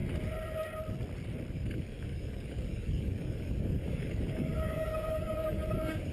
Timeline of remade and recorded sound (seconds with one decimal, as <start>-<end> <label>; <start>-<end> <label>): 0.0-1.5 recorded; 1.5-6.1 remade